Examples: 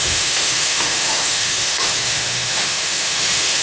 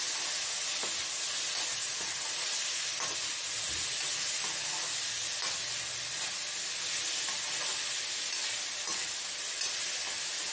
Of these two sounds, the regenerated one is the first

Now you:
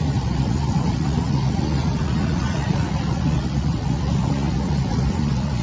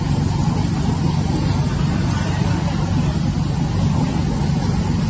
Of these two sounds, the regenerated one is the first